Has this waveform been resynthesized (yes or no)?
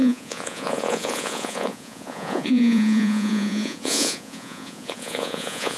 yes